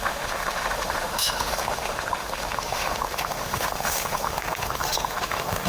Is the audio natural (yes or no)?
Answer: no